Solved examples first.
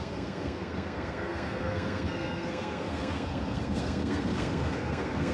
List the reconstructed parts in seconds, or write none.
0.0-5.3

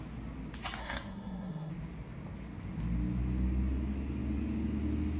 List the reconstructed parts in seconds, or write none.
0.8-1.7

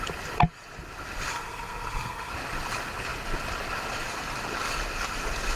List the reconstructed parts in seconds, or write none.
1.3-2.3

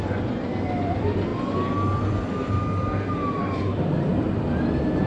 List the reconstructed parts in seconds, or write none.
none

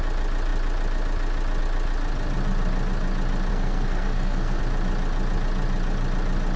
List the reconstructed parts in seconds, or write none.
3.5-4.6

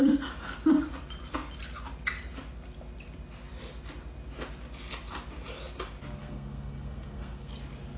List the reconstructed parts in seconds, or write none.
6.2-7.5

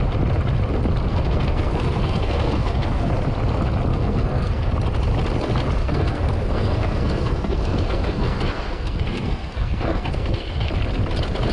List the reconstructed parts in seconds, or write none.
1.1-3.1; 3.9-4.7; 5.8-10.7